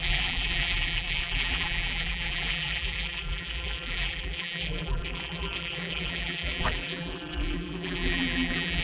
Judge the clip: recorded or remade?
remade